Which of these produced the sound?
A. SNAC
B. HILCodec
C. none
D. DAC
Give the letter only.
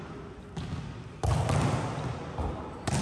C